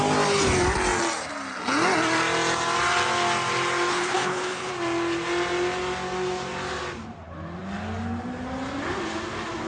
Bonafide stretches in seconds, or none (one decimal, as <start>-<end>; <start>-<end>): 0.0-3.9; 4.7-9.7